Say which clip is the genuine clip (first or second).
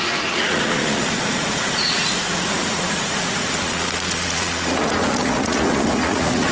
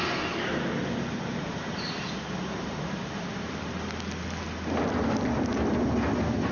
second